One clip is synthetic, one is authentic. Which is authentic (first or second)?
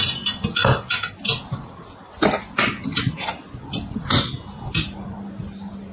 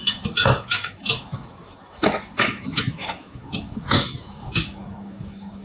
first